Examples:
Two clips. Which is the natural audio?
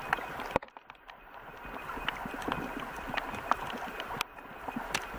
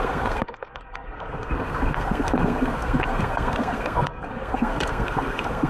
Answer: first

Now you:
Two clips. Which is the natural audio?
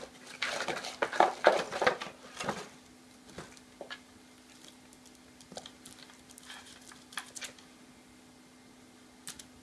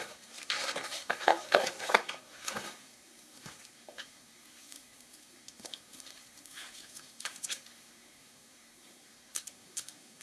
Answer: first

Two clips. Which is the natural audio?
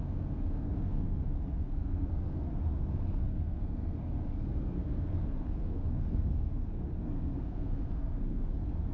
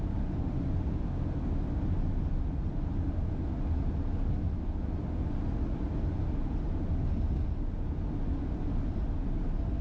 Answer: second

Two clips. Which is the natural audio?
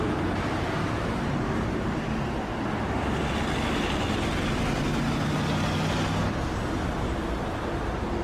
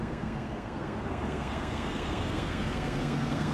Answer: first